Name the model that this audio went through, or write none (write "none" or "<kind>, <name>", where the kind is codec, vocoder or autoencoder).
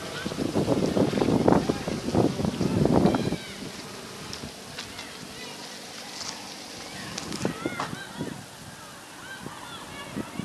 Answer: none